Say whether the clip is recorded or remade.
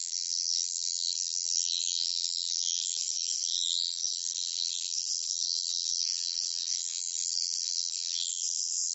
remade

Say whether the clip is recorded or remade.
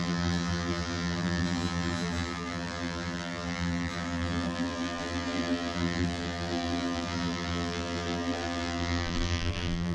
remade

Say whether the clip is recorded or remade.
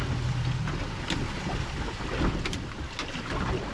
recorded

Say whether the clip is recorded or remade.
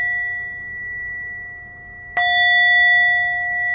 recorded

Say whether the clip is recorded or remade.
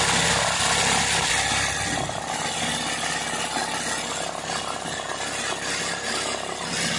recorded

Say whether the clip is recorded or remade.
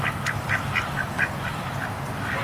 recorded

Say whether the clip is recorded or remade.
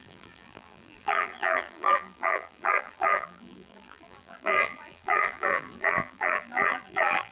remade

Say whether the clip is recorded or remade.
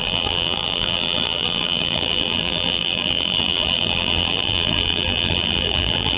remade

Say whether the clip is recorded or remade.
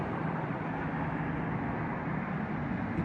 recorded